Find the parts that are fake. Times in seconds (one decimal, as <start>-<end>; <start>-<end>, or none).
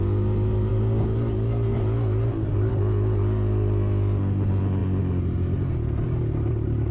none